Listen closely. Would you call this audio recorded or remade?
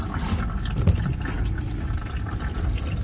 recorded